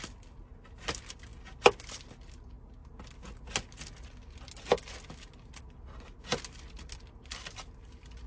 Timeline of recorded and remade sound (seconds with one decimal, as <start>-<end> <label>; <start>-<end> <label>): 0.0-8.3 recorded